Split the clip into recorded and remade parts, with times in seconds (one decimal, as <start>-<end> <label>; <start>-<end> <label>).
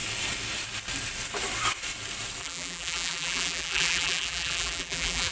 0.0-2.4 recorded; 2.4-5.3 remade